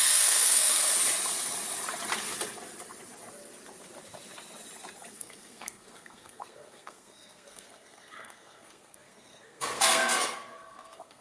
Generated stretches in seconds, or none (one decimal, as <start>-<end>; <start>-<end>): 0.0-0.9; 5.1-11.2